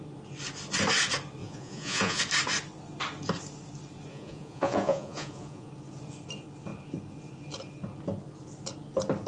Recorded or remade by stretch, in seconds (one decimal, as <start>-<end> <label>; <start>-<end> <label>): 0.0-1.4 recorded; 1.4-2.2 remade; 2.2-4.1 recorded; 4.1-5.7 remade; 5.7-9.3 recorded